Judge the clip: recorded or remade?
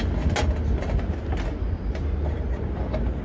recorded